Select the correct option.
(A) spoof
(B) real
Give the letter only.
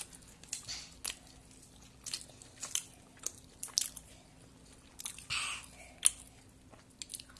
B